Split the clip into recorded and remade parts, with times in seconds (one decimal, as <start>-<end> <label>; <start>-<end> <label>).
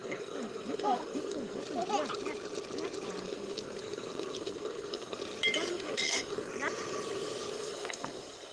0.0-1.6 remade; 1.6-3.2 recorded; 3.2-5.2 remade; 5.2-5.7 recorded; 5.7-6.5 remade; 6.5-7.5 recorded; 7.5-8.5 remade